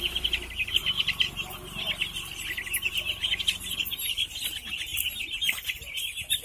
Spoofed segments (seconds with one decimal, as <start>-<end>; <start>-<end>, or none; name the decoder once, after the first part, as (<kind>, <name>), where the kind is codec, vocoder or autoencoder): none